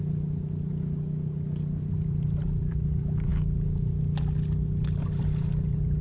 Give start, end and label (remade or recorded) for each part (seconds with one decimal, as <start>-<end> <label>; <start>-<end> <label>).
0.0-1.8 recorded; 1.8-3.3 remade; 3.3-5.2 recorded; 5.2-6.0 remade